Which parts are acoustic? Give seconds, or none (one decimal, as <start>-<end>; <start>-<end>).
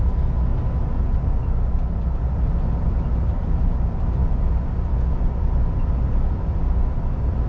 0.0-7.5